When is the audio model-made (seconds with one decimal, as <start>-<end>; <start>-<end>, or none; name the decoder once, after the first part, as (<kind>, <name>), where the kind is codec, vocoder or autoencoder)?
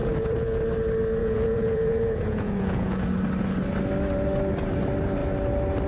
0.0-0.6 (vocoder, Vocos); 1.2-3.1